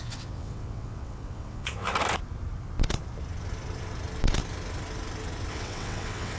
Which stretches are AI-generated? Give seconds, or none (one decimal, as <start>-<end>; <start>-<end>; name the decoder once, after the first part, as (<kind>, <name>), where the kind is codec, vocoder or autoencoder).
0.0-1.9 (vocoder, WaveNeXt); 5.5-6.4